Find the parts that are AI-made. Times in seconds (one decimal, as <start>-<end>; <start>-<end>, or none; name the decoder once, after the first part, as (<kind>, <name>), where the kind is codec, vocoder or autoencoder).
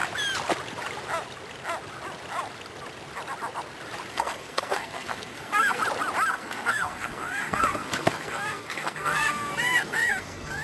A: 4.1-5.8 (codec, SNAC); 6.3-10.6